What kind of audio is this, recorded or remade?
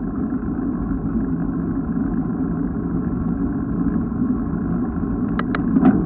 recorded